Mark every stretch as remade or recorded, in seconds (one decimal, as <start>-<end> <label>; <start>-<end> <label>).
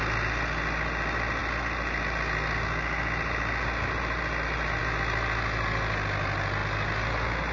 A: 0.0-7.5 recorded